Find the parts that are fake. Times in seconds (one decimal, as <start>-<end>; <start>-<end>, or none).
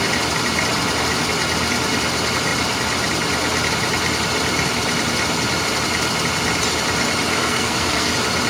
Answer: 7.3-8.1